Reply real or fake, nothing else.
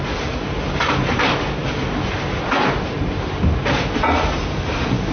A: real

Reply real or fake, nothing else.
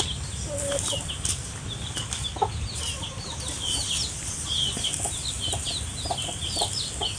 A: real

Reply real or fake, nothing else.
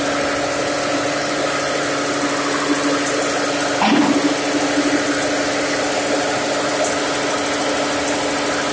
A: real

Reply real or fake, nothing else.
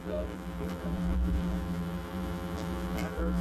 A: fake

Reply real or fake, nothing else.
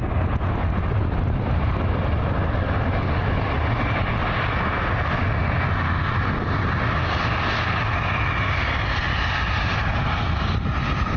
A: real